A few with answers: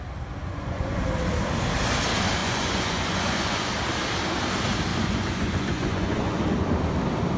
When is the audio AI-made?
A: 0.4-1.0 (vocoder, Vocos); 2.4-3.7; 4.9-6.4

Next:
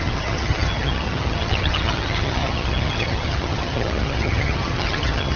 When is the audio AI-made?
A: 0.0-5.4 (vocoder, HiFi-GAN)

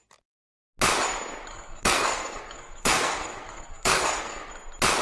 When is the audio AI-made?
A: 1.5-4.5 (codec, SNAC)

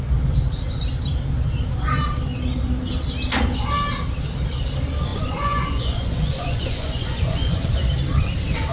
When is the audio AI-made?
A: 5.1-7.6 (vocoder, Vocos)

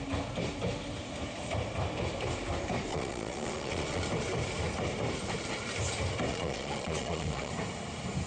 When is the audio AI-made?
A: 2.9-4.0 (vocoder, Vocos); 6.3-7.5